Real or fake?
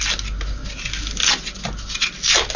real